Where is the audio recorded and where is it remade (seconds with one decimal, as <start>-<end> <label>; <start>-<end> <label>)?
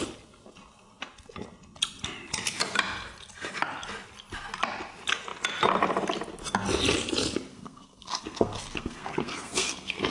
0.0-7.5 recorded; 7.5-10.1 remade